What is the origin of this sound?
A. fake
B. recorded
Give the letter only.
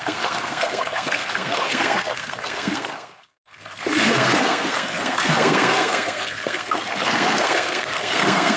A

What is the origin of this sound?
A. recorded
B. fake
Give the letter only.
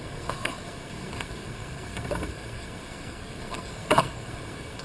B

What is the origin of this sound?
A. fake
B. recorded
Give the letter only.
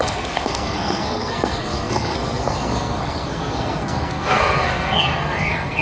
A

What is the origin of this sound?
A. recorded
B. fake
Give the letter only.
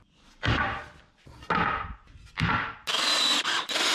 A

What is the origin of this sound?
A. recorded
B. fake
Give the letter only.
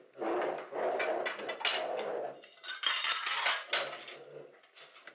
A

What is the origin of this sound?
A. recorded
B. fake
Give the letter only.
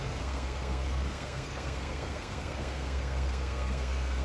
B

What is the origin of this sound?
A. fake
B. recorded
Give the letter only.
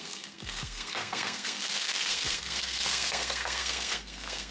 A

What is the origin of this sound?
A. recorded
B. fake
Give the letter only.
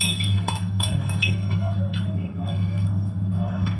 B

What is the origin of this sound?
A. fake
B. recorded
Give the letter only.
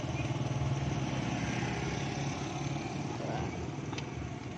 B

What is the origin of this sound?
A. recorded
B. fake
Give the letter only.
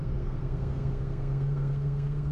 B